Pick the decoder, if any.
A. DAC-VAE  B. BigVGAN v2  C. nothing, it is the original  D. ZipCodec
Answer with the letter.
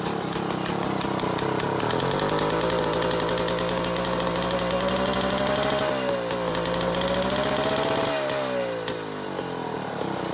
C